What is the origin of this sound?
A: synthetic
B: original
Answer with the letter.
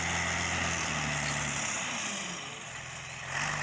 B